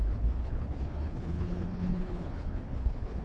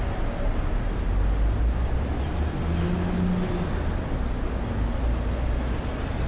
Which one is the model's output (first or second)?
first